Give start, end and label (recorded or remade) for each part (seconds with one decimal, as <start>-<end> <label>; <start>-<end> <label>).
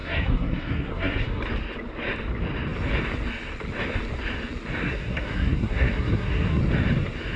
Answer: 0.0-1.4 remade; 1.4-4.8 recorded; 4.8-6.6 remade; 6.6-7.4 recorded